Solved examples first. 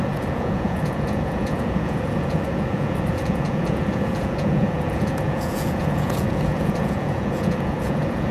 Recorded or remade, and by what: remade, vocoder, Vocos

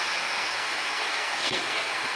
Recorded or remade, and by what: remade, codec, SNAC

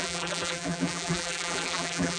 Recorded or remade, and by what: remade, vocoder, BigVGAN v2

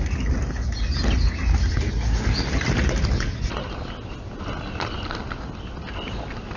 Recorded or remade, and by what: recorded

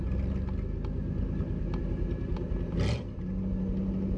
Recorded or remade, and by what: recorded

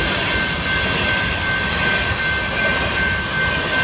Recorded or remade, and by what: recorded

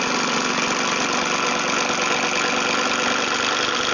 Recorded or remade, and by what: recorded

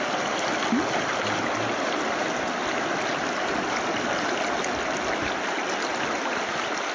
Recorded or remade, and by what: recorded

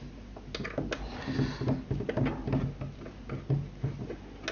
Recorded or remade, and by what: recorded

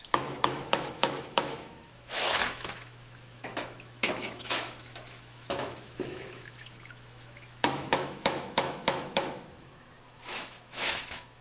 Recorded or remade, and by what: remade, autoencoder, DAC-VAE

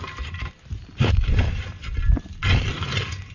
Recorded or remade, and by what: recorded